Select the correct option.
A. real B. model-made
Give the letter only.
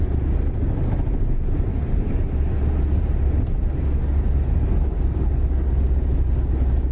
A